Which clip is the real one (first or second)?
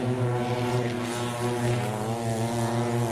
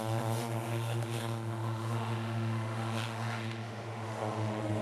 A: first